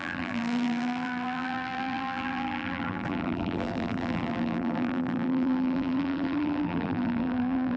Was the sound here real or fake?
fake